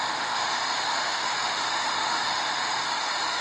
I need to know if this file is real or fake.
fake